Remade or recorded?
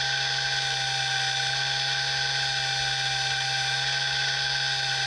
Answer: recorded